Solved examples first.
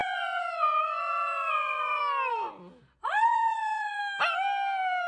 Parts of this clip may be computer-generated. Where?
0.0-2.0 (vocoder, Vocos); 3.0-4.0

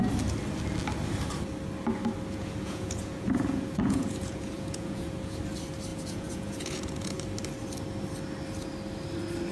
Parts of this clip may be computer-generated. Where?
2.3-5.4 (vocoder, Vocos); 5.9-7.2

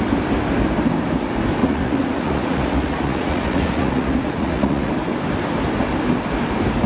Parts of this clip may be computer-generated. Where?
1.6-4.9 (vocoder, Vocos)

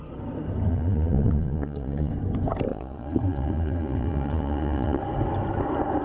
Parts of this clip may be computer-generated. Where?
0.7-2.1 (vocoder, Vocos); 2.7-5.0

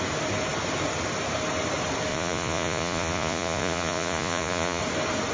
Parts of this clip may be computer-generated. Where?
2.1-4.8 (vocoder, Vocos)

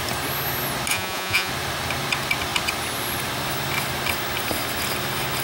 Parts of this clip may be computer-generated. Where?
0.9-1.5 (vocoder, Vocos)

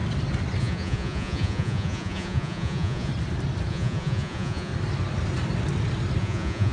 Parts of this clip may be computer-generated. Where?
0.6-3.1 (vocoder, Vocos); 3.7-4.7; 6.2-6.7

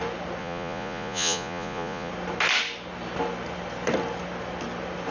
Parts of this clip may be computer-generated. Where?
0.4-2.1 (vocoder, Vocos)